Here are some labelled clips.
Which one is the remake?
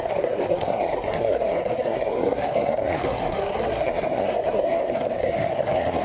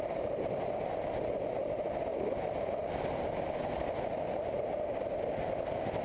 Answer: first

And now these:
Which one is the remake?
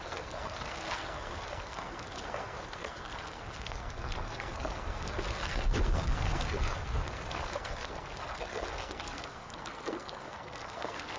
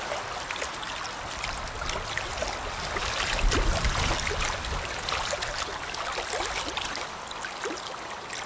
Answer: first